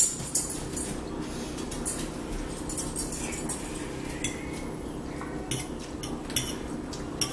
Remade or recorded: recorded